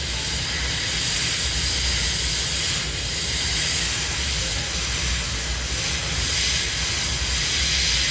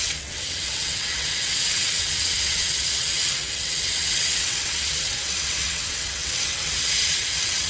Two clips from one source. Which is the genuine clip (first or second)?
first